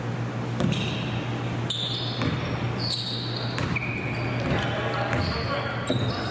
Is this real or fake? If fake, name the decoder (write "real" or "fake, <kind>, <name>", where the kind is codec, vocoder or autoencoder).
real